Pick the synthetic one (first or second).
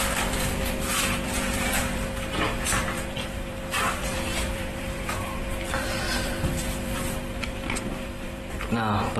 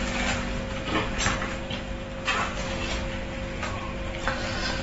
first